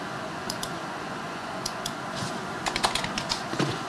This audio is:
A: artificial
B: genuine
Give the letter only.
A